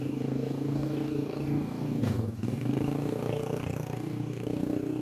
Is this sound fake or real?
fake